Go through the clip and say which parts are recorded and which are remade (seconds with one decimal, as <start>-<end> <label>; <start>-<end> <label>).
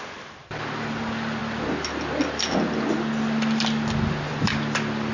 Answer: 0.0-5.1 recorded